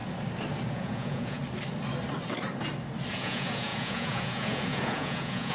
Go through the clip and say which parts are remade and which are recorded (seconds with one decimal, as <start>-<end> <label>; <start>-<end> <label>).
0.0-0.7 recorded; 0.7-1.4 remade; 1.4-3.1 recorded; 3.1-5.5 remade